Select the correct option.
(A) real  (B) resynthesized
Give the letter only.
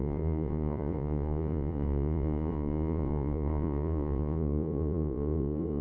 B